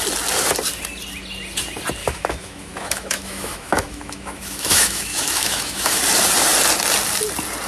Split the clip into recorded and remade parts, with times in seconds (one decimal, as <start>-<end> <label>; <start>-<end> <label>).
0.0-2.0 recorded; 2.0-6.0 remade; 6.0-7.7 recorded